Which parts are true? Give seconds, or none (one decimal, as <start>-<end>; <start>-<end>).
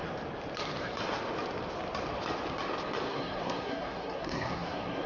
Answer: 0.0-3.1